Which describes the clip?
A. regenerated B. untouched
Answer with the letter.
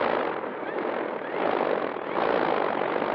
B